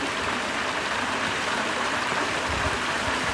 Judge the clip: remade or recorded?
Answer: recorded